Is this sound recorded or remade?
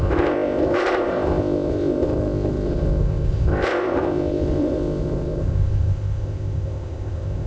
remade